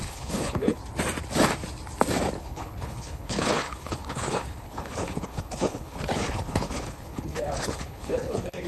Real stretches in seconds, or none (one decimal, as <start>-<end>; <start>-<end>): 0.8-2.4